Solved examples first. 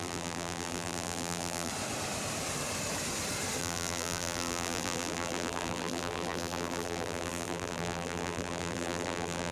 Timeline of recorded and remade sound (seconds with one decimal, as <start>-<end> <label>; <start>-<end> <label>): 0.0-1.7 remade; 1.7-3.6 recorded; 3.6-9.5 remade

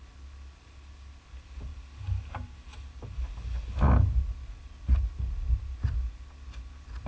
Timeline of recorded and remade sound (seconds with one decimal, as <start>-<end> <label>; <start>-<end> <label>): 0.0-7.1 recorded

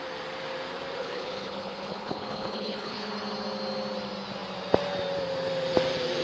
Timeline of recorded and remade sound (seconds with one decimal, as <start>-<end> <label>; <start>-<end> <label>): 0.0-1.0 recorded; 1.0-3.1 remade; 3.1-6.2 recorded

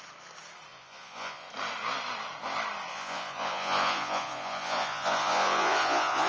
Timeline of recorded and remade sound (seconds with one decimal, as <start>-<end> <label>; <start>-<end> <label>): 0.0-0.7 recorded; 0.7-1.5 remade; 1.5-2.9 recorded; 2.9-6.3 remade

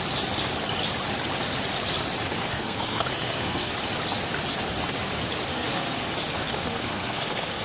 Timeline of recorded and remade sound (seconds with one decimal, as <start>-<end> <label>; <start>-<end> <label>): 0.0-2.5 recorded; 2.5-3.7 remade; 3.7-5.5 recorded; 5.5-6.1 remade; 6.1-6.5 recorded; 6.5-7.6 remade

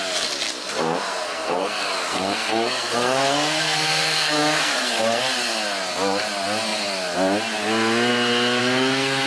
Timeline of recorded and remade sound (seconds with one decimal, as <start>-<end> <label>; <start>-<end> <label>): 0.0-0.6 recorded; 0.6-5.2 remade; 5.2-8.6 recorded; 8.6-9.3 remade